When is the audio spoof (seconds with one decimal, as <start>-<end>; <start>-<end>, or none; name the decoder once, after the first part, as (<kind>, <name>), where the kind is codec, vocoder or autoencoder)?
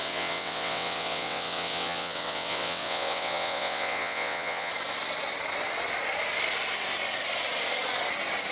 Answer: 0.0-4.7 (vocoder, WaveNeXt)